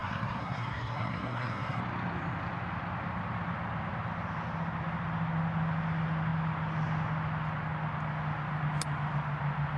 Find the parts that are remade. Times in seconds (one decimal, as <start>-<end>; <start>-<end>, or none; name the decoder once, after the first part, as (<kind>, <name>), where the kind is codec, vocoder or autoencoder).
0.0-1.8 (codec, SNAC)